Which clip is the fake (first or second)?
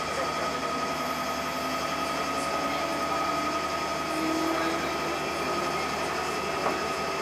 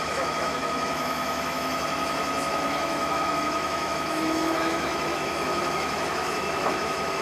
second